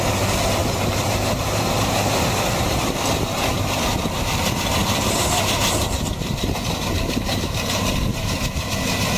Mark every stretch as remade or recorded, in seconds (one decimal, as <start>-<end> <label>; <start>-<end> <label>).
0.0-0.6 recorded; 0.6-2.2 remade; 2.2-4.8 recorded; 4.8-8.1 remade; 8.1-9.2 recorded